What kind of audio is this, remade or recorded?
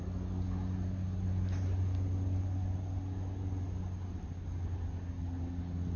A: recorded